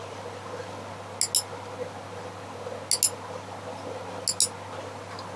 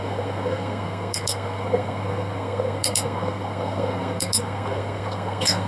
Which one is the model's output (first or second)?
second